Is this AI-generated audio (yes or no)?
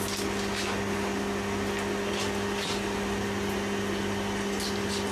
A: no